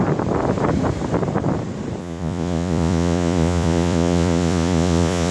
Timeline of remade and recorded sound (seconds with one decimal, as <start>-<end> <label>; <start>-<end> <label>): 0.0-2.0 recorded; 2.0-5.3 remade